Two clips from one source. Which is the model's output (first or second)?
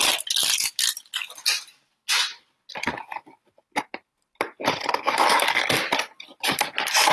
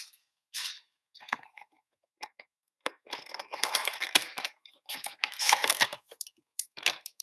second